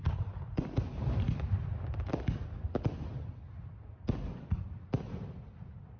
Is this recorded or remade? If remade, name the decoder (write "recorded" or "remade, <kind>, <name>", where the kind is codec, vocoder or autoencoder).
recorded